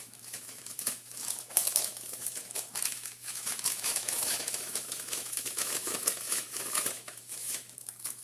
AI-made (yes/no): yes